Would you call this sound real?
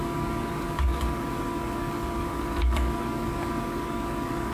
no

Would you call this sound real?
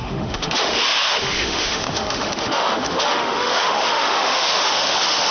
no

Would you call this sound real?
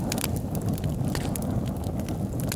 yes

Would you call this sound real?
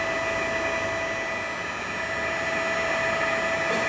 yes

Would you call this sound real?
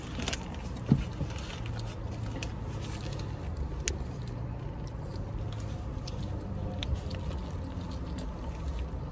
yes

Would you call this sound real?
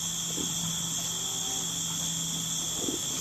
yes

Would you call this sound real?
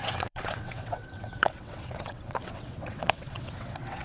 no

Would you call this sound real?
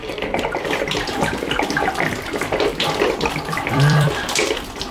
no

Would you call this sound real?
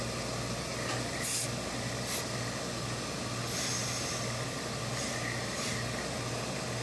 yes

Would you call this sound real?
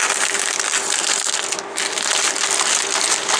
yes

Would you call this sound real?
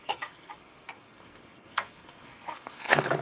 no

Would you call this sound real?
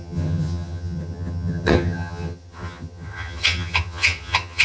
no